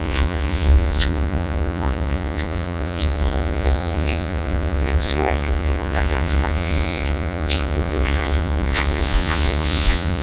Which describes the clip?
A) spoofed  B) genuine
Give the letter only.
A